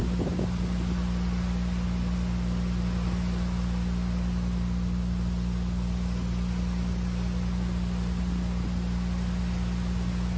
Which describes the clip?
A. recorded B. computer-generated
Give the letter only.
A